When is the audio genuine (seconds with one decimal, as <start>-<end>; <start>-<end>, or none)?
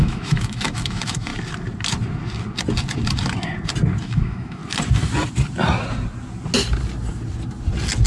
1.3-4.0; 4.6-8.1